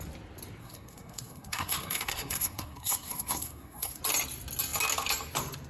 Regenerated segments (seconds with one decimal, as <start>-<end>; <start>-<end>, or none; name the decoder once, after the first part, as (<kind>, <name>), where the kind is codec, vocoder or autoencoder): 0.6-4.0 (codec, SNAC)